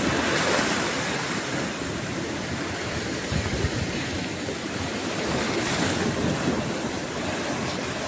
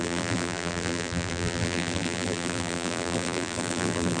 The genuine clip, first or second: first